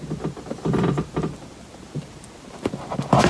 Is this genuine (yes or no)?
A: yes